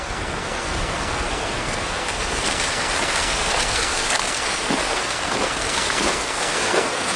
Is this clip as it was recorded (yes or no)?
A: no